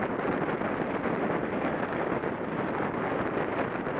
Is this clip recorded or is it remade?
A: recorded